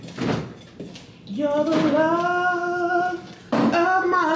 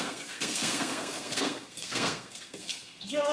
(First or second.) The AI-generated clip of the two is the second